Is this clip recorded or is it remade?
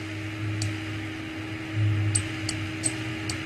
recorded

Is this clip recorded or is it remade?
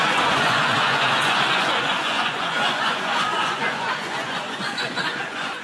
remade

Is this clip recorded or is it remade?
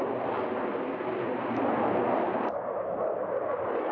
recorded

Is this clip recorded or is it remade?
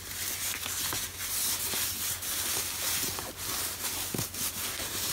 recorded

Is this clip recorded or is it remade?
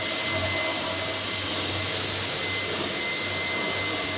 recorded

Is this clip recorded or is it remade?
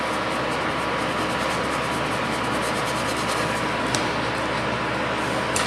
recorded